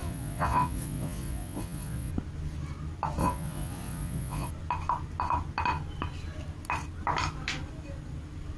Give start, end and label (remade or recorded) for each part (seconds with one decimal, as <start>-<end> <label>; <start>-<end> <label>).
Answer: 0.0-2.1 remade; 2.1-3.2 recorded; 3.2-4.5 remade; 4.5-8.6 recorded